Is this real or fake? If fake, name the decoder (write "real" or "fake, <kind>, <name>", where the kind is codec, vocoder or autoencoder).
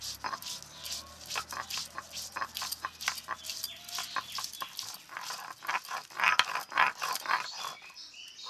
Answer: real